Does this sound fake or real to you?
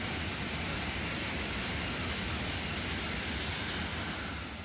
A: real